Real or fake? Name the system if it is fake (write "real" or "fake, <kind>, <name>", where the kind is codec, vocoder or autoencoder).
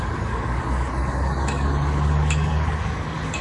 fake, codec, DAC